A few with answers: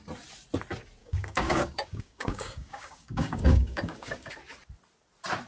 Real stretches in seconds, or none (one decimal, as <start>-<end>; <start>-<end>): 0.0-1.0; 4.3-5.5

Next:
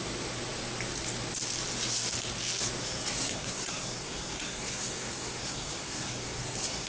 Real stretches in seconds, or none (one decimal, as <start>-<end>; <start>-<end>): 0.0-2.8

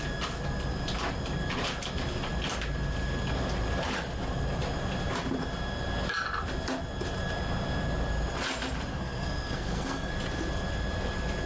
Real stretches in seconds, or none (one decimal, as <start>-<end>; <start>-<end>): 0.0-8.9; 10.1-11.5